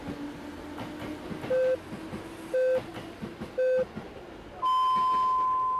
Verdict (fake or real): real